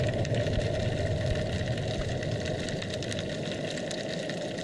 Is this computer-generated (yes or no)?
no